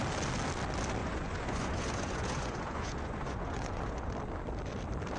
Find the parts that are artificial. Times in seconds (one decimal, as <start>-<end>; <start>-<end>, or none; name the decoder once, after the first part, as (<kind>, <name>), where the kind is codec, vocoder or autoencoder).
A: 1.0-4.1 (vocoder, Vocos)